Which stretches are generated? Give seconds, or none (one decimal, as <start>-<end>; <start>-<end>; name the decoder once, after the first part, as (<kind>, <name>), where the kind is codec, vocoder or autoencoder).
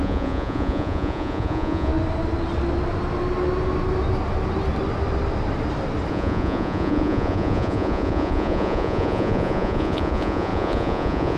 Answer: 0.0-1.9 (vocoder, Vocos); 6.1-11.4